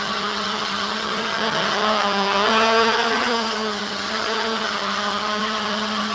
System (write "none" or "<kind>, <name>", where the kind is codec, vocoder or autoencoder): vocoder, HiFi-GAN